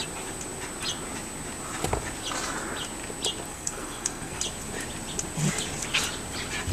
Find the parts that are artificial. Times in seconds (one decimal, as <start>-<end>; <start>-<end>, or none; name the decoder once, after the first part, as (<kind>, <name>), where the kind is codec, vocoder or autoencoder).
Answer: 3.5-4.4 (codec, SNAC)